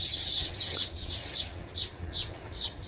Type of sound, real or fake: fake